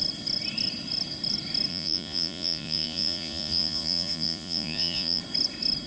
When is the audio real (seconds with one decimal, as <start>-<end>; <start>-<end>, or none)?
0.0-1.7; 5.2-5.9